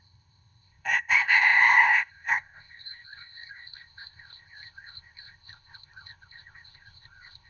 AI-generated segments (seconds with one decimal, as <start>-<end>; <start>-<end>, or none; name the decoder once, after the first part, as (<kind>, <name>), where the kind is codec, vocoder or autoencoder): 0.0-7.5 (codec, ZipCodec)